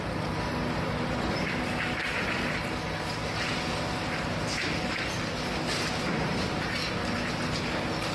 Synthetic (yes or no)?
no